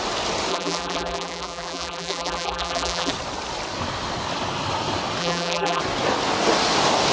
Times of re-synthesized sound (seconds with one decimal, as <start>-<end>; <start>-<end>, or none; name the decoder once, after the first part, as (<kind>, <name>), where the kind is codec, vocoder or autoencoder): 0.5-3.1 (vocoder, BigVGAN v2); 5.2-5.8